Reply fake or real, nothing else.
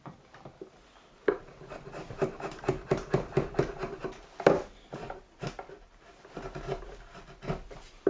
real